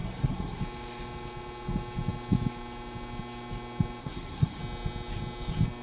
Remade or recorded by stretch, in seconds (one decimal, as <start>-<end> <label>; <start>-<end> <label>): 0.0-0.6 remade; 0.6-4.0 recorded; 4.0-4.6 remade; 4.6-5.8 recorded